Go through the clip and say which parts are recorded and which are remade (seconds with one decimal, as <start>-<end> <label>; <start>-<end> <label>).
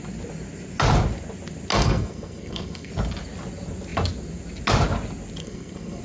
0.0-1.7 recorded; 1.7-2.9 remade; 2.9-5.4 recorded; 5.4-6.0 remade